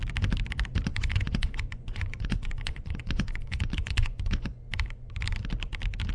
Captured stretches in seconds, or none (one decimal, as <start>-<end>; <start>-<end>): 0.0-0.9; 4.6-6.1